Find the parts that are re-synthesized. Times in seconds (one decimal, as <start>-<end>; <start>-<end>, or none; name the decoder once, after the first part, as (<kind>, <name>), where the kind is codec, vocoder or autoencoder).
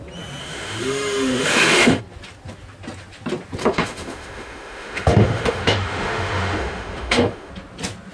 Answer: 0.4-2.0 (autoencoder, DAC-VAE); 3.6-7.5